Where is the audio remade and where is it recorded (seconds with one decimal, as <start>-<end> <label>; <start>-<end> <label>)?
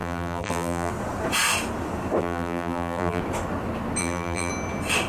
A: 0.0-0.9 remade; 0.9-2.2 recorded; 2.2-3.2 remade; 3.2-4.0 recorded; 4.0-4.5 remade; 4.5-5.1 recorded